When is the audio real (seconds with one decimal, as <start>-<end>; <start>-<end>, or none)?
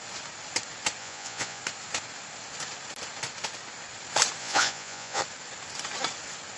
0.0-1.0; 1.6-4.4; 5.2-6.6